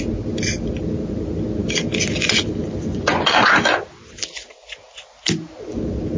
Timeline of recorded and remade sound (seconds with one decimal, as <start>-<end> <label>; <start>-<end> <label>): 0.0-2.9 recorded; 2.9-3.6 remade; 3.6-6.2 recorded